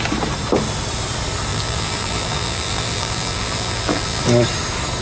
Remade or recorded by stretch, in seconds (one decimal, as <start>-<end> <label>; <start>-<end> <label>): 0.0-1.5 recorded; 1.5-4.2 remade; 4.2-5.0 recorded